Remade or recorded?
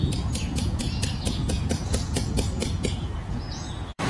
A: remade